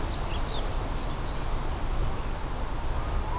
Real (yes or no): yes